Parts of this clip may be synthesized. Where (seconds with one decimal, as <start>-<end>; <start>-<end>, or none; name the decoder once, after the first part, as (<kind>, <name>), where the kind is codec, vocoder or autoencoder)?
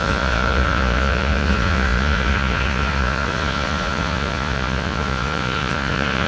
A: 0.0-6.3 (vocoder, Vocos)